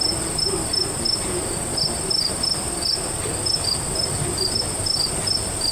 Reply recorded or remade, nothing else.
recorded